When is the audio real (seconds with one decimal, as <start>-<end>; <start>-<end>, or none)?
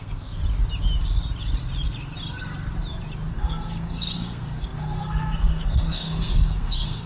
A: 0.4-3.3